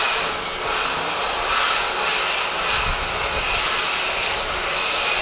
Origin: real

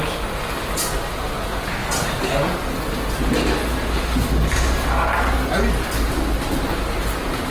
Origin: real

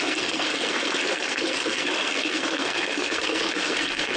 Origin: fake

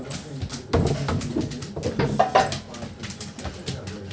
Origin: real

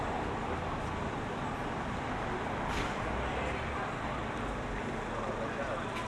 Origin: real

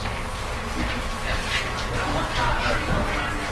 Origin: real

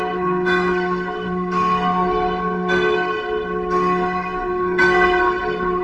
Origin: fake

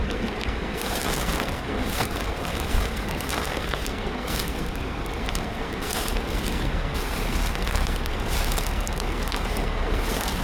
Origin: fake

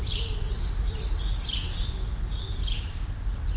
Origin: real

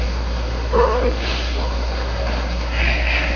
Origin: fake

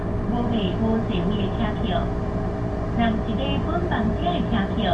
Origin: real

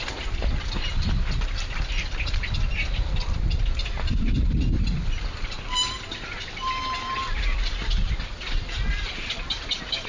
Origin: real